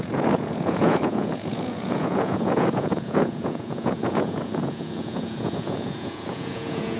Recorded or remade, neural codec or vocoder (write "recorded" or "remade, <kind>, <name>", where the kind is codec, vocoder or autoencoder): remade, vocoder, Vocos